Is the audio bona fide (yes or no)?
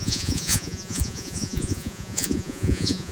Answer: no